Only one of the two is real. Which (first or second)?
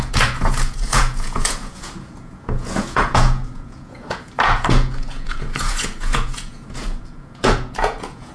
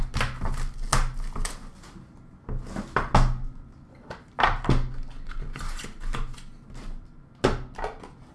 second